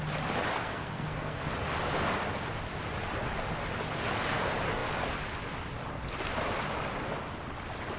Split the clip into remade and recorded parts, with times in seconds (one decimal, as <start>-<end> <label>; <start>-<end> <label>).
0.0-0.6 recorded; 0.6-1.4 remade; 1.4-8.0 recorded